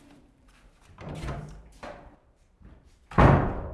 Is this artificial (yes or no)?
yes